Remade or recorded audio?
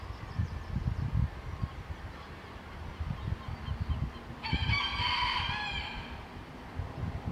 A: remade